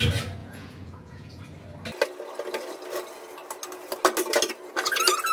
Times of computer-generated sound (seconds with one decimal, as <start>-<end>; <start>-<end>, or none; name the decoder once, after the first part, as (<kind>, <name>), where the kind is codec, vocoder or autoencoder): 0.4-1.4 (vocoder, Vocos)